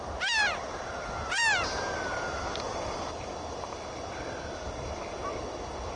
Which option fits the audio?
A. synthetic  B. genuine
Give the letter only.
B